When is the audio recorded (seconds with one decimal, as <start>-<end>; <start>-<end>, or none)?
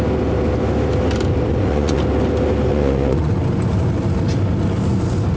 0.0-1.5; 2.0-2.7; 3.3-5.4